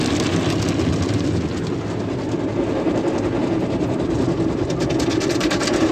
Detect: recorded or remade recorded